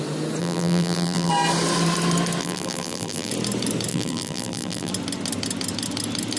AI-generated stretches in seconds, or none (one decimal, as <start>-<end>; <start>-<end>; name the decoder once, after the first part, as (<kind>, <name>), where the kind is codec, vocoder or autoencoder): 0.4-1.3 (vocoder, BigVGAN v2); 2.4-3.3; 3.9-4.9

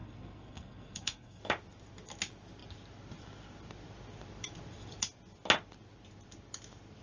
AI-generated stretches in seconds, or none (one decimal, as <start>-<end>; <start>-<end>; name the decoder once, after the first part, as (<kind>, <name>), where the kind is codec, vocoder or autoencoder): 0.0-1.4 (codec, SNAC)

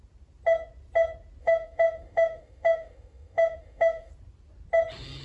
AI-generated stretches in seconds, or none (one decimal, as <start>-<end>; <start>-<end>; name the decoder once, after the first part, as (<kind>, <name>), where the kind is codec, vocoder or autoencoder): 1.4-4.1 (autoencoder, DAC-VAE)